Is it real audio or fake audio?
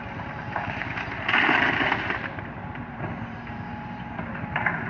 fake